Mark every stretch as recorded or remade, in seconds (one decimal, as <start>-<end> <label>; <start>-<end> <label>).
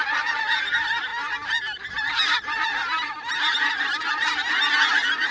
0.0-5.3 recorded